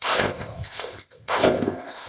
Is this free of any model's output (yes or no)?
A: no